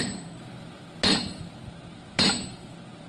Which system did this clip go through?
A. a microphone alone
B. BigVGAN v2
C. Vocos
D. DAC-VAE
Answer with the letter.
A